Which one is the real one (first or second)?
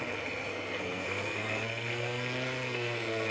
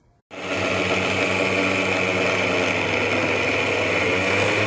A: second